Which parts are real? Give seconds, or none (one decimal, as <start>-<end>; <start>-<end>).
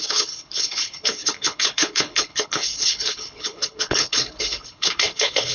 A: none